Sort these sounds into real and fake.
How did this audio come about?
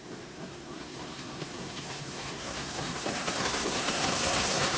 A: fake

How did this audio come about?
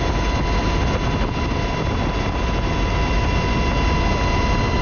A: real